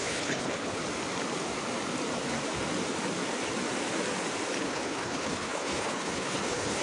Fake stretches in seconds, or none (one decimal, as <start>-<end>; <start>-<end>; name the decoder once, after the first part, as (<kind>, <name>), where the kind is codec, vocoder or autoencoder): 0.0-0.8 (codec, HILCodec); 4.6-6.8